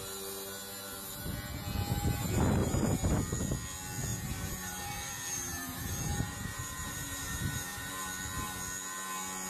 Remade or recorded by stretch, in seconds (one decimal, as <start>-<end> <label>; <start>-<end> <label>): 0.0-2.6 recorded; 2.6-3.1 remade; 3.1-4.1 recorded; 4.1-7.9 remade; 7.9-9.5 recorded